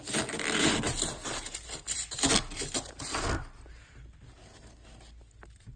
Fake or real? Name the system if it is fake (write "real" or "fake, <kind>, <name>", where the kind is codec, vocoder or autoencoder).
real